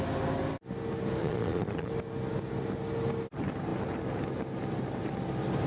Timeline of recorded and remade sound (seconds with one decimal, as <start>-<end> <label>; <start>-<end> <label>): 0.0-1.2 recorded; 1.2-1.9 remade; 1.9-5.7 recorded